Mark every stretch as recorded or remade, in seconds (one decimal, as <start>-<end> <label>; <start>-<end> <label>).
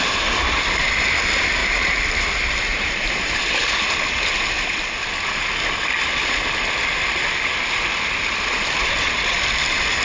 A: 0.0-1.6 recorded; 1.6-3.4 remade; 3.4-10.0 recorded